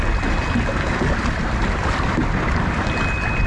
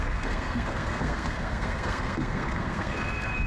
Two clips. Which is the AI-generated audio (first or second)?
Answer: second